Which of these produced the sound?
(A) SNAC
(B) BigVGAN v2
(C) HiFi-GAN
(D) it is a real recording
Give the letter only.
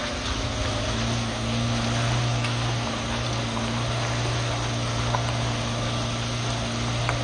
D